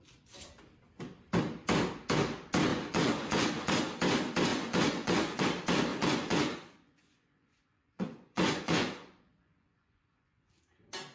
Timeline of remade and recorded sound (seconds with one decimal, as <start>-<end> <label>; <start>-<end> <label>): 0.0-2.7 recorded; 2.7-3.7 remade; 3.7-4.5 recorded; 4.5-5.4 remade; 5.4-5.9 recorded; 5.9-10.5 remade; 10.5-11.1 recorded